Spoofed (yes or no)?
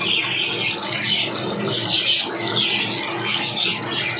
no